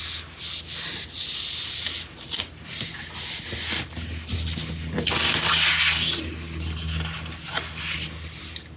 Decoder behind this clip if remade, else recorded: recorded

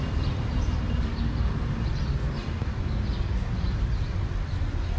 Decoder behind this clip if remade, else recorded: remade, vocoder, BigVGAN v2